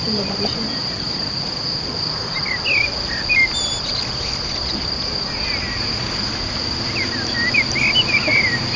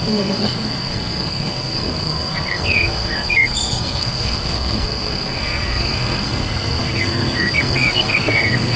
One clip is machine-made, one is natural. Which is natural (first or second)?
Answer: first